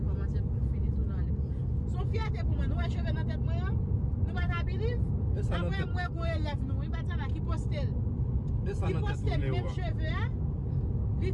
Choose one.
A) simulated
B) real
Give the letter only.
B